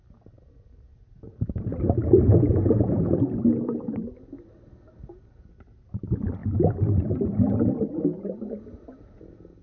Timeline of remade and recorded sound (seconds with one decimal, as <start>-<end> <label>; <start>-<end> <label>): 0.0-9.6 recorded

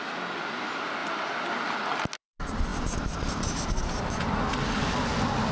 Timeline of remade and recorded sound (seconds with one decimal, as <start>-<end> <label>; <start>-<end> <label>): 0.0-5.5 recorded

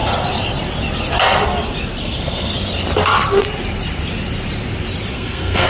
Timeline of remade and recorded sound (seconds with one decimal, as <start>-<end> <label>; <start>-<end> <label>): 0.0-2.0 recorded; 2.0-2.5 remade; 2.5-5.1 recorded; 5.1-5.7 remade